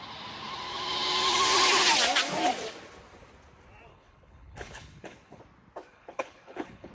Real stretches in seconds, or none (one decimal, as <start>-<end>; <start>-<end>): 0.0-3.9; 5.4-5.9